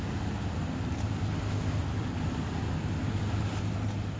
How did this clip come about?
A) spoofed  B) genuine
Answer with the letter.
B